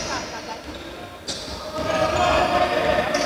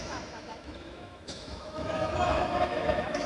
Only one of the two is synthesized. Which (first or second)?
second